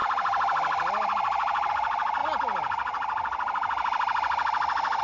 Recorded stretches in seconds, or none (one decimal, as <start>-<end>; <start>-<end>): 0.0-5.0